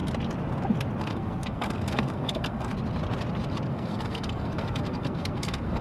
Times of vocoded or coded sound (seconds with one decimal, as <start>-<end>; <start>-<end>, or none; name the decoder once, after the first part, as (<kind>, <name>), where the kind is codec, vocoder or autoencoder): 1.0-2.7 (codec, SNAC); 3.7-5.8